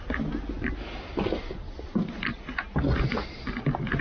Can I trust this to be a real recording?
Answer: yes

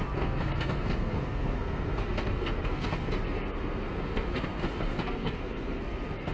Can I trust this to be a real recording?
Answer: no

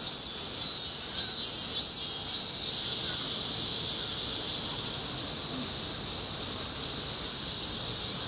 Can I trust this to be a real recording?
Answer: yes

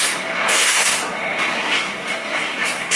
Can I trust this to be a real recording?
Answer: no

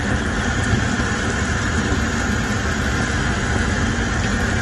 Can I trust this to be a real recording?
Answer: yes